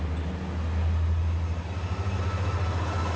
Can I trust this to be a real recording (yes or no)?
yes